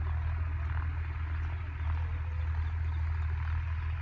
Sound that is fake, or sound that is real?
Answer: real